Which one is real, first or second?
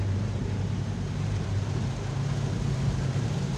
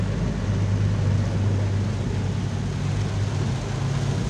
second